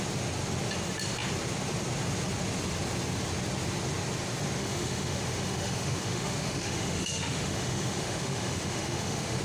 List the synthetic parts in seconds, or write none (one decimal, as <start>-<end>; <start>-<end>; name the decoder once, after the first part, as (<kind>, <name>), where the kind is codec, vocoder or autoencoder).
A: 4.6-9.4 (autoencoder, DAC-VAE)